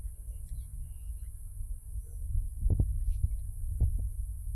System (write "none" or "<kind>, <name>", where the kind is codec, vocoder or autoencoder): vocoder, Vocos